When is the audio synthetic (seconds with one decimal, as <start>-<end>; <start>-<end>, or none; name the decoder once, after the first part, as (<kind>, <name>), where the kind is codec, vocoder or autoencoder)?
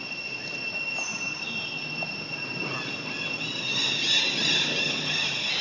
none